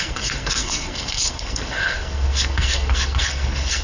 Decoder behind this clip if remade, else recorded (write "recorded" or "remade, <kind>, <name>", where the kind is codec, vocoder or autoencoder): remade, codec, SNAC